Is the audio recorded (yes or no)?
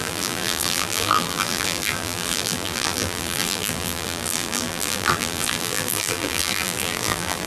no